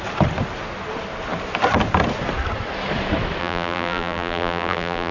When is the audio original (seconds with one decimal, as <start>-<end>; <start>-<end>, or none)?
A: 0.0-3.4